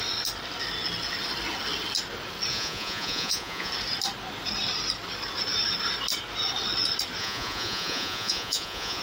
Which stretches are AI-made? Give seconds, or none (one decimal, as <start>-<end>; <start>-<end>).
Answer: 2.5-3.7; 7.2-9.0